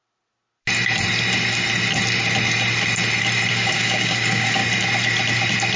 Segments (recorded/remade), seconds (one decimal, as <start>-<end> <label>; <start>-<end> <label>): 0.0-3.5 recorded; 3.5-4.6 remade; 4.6-5.8 recorded